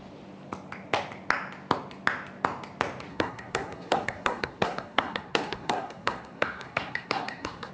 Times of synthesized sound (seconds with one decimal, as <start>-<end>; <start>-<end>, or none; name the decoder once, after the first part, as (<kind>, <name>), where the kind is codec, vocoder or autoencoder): 3.1-7.7 (codec, SNAC)